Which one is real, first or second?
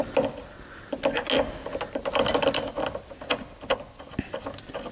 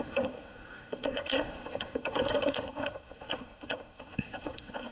first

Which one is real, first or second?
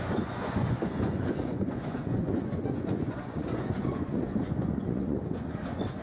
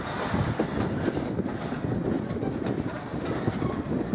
second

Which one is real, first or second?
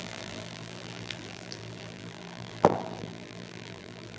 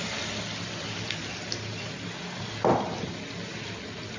second